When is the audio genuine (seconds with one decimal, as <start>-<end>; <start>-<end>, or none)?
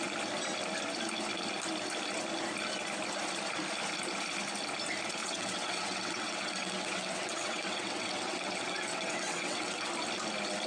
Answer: 0.0-5.2; 9.9-10.7